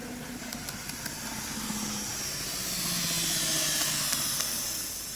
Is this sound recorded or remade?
recorded